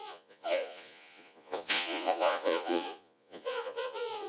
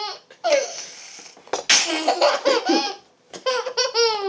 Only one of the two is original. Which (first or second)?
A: second